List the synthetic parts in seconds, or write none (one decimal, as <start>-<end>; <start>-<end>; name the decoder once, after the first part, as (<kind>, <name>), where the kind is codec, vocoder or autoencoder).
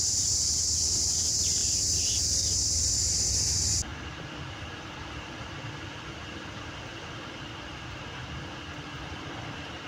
0.0-9.9 (vocoder, BigVGAN v2)